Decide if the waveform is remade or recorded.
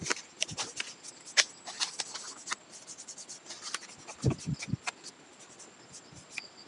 recorded